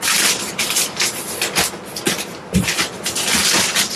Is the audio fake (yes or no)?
no